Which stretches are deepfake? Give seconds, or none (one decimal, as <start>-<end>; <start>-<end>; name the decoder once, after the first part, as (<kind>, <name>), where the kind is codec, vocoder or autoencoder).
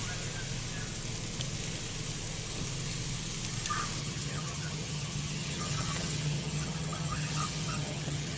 4.0-8.4 (vocoder, HiFi-GAN)